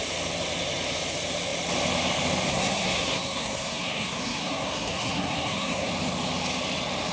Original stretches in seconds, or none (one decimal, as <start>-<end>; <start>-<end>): 0.0-2.5; 5.9-7.1